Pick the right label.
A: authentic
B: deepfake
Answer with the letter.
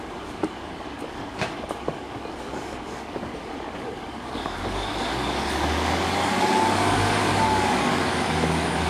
B